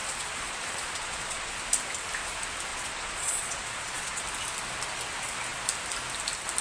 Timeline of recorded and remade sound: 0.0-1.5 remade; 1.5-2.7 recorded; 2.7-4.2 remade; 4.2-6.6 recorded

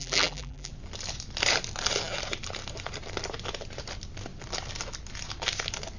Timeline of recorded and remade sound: 0.0-0.7 remade; 0.7-6.0 recorded

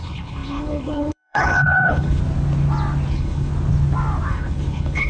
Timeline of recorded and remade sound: 0.0-2.2 remade; 2.2-3.1 recorded; 3.1-3.5 remade; 3.5-4.3 recorded; 4.3-5.1 remade

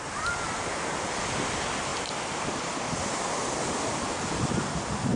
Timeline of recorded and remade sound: 0.0-1.9 recorded; 1.9-2.8 remade; 2.8-5.2 recorded

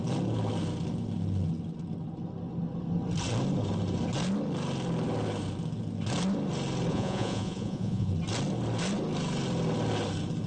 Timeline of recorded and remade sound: 0.0-6.9 recorded; 6.9-8.1 remade; 8.1-10.5 recorded